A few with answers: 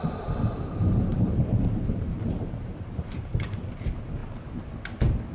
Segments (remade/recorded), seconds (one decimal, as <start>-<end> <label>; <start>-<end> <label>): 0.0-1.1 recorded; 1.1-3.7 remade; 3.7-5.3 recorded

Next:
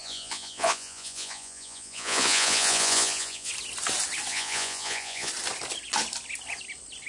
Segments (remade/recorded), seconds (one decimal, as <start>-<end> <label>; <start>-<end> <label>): 0.0-3.5 remade; 3.5-4.3 recorded; 4.3-5.3 remade; 5.3-7.1 recorded

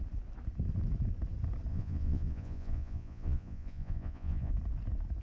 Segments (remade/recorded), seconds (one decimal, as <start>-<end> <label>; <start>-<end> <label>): 0.0-1.7 recorded; 1.7-4.5 remade; 4.5-5.2 recorded